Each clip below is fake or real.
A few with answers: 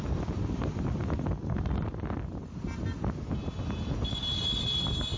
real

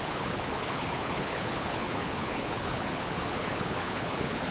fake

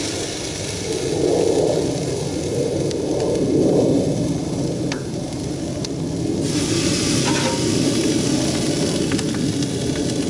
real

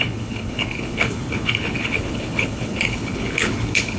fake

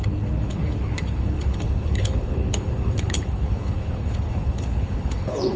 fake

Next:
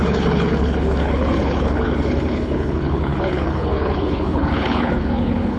fake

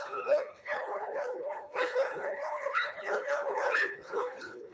fake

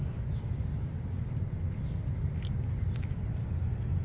real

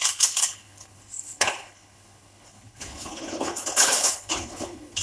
fake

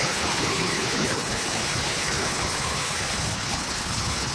fake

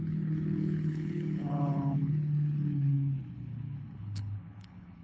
fake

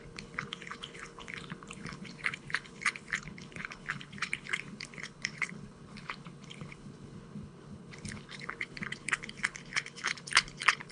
fake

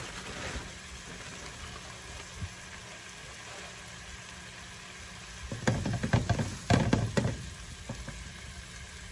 real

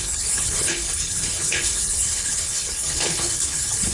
fake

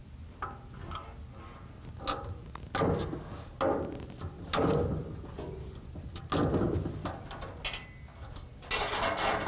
real